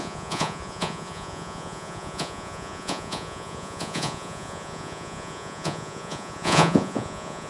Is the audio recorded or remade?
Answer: remade